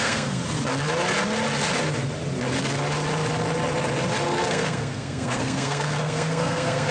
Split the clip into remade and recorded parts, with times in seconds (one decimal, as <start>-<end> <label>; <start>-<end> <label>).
0.0-0.4 remade; 0.4-4.5 recorded; 4.5-6.9 remade